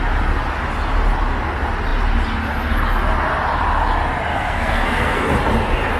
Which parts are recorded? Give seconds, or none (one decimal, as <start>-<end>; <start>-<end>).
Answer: 0.0-4.3; 5.2-6.0